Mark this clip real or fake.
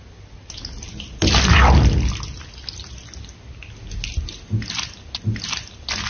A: real